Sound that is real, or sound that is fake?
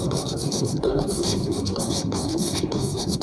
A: fake